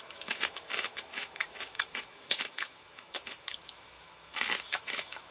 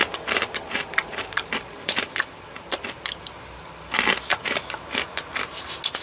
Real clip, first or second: second